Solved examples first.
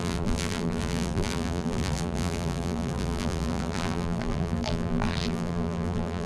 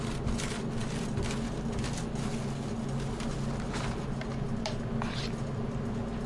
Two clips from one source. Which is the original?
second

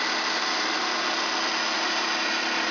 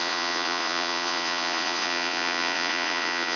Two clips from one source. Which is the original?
first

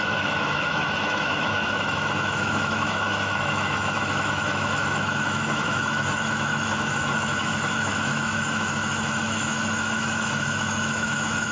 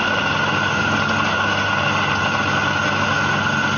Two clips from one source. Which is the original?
second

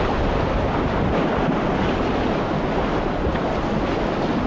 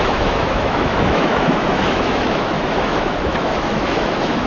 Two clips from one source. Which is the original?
first